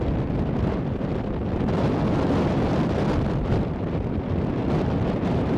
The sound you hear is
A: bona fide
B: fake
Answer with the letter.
A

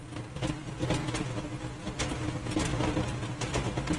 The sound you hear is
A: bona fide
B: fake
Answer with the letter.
A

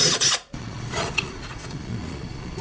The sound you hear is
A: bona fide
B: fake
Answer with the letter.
B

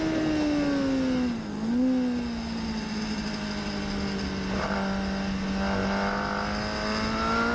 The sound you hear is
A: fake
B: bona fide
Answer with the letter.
B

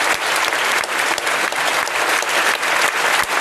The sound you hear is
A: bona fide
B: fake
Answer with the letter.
A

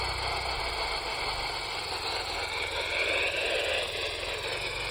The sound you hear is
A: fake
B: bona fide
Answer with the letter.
B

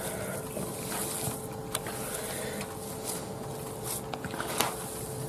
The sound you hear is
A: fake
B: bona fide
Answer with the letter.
B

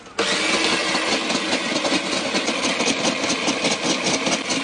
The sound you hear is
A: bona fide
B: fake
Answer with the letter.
A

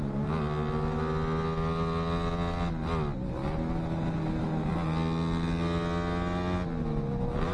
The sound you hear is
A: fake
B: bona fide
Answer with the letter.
B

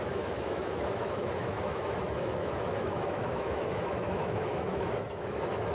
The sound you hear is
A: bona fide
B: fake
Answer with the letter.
B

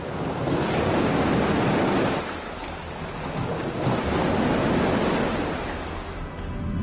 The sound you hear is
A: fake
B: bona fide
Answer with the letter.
B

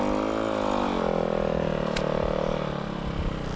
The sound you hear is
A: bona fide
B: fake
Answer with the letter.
A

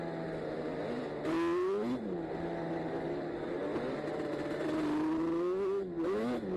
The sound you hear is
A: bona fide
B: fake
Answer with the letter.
A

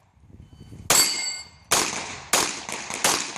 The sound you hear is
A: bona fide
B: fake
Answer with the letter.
A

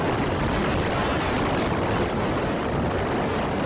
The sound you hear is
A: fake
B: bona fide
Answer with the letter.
B